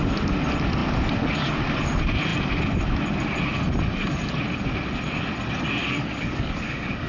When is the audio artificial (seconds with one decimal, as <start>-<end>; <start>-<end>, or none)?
5.8-7.1

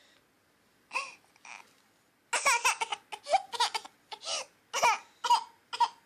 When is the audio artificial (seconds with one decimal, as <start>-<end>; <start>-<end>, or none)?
none